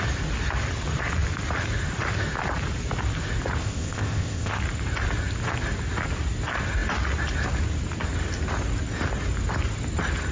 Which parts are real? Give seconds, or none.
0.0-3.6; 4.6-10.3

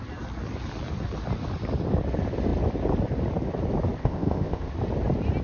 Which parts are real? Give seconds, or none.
0.0-4.0; 4.7-5.4

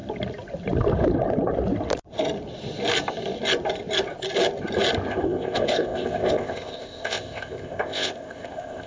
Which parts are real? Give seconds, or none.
0.0-5.1

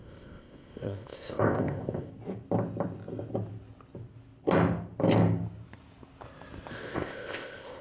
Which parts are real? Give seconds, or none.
2.1-6.7

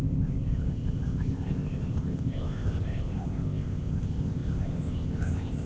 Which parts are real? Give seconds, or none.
none